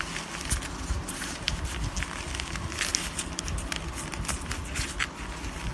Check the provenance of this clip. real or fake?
real